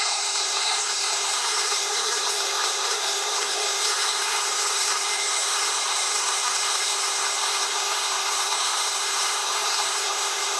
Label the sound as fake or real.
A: fake